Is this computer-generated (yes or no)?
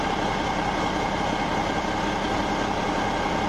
no